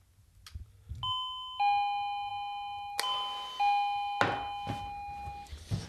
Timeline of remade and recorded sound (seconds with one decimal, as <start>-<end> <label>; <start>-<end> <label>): 0.0-5.9 recorded